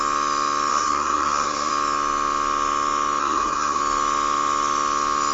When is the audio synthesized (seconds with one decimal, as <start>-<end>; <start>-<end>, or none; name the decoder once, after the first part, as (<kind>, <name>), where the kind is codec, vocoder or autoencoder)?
0.7-1.7 (codec, SNAC); 3.2-3.8